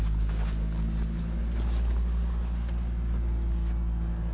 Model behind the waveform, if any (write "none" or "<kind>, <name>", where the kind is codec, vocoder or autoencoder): none